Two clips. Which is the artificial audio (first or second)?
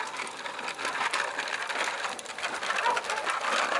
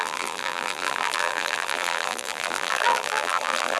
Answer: second